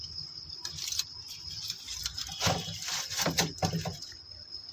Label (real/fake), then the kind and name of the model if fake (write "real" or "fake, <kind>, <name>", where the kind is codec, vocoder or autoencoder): real